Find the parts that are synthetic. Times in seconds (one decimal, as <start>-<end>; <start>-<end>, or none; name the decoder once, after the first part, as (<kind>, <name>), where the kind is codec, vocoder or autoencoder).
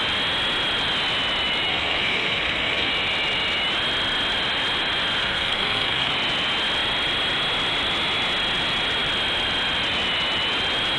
1.7-2.9 (codec, SNAC); 5.2-6.1